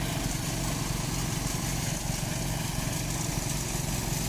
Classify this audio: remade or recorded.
recorded